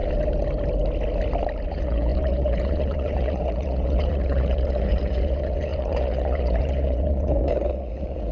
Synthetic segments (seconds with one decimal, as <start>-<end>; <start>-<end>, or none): 1.7-8.3